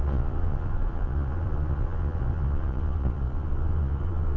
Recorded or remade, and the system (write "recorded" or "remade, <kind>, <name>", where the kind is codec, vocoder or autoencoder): remade, vocoder, Vocos